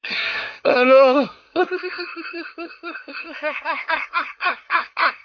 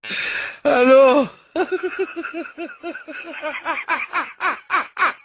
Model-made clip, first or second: first